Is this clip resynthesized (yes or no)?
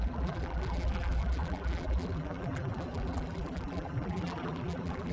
yes